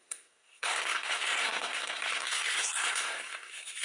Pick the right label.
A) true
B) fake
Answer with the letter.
B